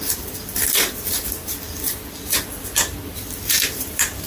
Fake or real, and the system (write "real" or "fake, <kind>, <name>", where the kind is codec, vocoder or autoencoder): fake, vocoder, BigVGAN v2